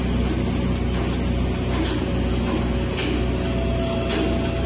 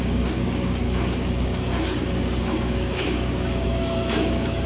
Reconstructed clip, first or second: second